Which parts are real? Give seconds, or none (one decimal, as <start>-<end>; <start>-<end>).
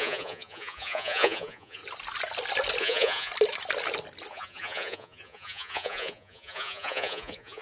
1.8-2.8; 3.3-4.3